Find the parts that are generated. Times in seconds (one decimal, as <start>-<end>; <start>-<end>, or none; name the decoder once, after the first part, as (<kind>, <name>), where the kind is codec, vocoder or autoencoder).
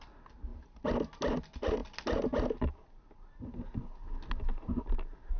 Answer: none